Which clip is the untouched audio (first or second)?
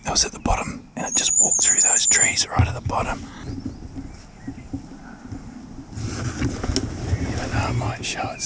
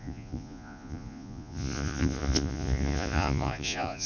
first